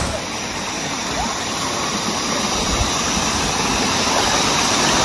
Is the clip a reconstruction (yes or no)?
no